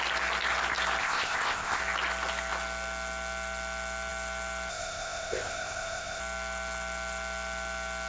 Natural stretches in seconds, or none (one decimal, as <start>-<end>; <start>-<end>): 0.0-1.0; 1.8-4.7; 6.2-8.1